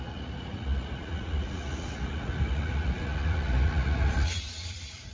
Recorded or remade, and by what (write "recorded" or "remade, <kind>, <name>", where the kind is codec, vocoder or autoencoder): remade, vocoder, Vocos